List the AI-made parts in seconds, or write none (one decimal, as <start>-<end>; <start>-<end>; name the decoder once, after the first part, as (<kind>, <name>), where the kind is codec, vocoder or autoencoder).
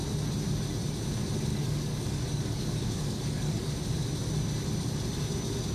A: 1.5-3.7 (codec, DAC)